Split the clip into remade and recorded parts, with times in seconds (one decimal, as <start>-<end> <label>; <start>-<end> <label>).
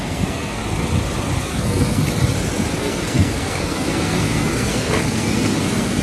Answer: 0.0-0.6 remade; 0.6-1.4 recorded; 1.4-2.0 remade; 2.0-2.8 recorded; 2.8-6.0 remade